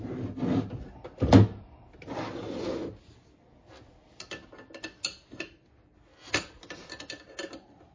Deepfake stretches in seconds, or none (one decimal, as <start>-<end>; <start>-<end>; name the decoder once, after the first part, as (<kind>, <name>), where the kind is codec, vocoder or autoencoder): none